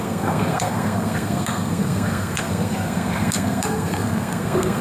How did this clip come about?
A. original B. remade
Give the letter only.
B